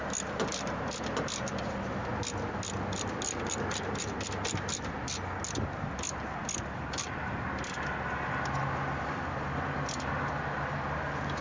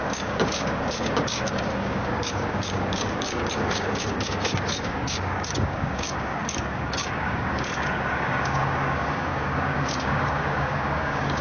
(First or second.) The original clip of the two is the first